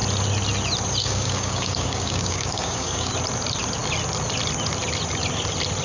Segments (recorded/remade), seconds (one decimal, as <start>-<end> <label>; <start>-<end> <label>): 0.0-1.0 recorded; 1.0-3.1 remade; 3.1-5.8 recorded